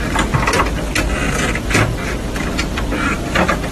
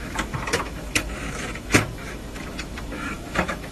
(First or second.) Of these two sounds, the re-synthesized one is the second